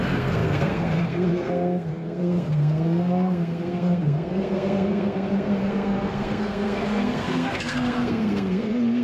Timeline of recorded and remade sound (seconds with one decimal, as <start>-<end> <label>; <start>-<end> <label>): 0.0-9.0 remade